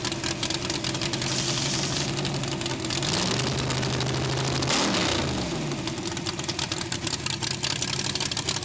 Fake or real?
real